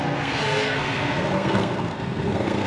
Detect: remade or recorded remade